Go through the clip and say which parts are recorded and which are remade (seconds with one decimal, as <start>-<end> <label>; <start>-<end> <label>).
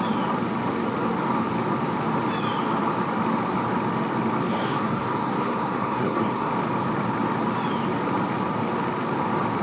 0.0-4.5 recorded; 4.5-6.5 remade; 6.5-9.6 recorded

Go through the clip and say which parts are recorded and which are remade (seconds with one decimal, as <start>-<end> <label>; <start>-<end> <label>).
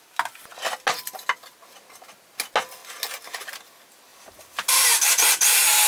0.0-4.1 recorded; 4.1-5.1 remade; 5.1-5.9 recorded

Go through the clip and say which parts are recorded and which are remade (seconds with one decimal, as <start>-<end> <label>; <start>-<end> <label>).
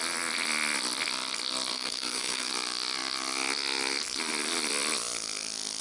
0.0-1.7 recorded; 1.7-2.5 remade; 2.5-5.8 recorded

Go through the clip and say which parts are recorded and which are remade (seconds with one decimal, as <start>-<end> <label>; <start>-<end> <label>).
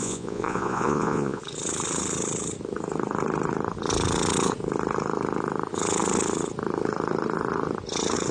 0.0-1.4 remade; 1.4-8.3 recorded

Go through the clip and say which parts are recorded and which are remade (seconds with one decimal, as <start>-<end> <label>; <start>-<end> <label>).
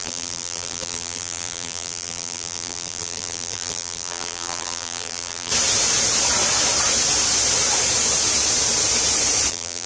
0.0-5.5 remade; 5.5-9.5 recorded; 9.5-9.9 remade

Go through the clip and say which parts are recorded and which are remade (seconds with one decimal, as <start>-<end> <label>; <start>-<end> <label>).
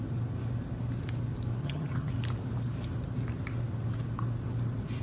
0.0-1.6 recorded; 1.6-2.1 remade; 2.1-5.0 recorded